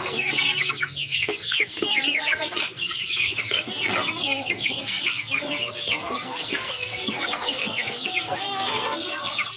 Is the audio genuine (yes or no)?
no